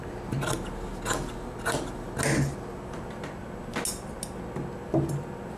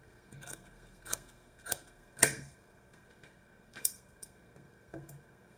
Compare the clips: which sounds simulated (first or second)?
second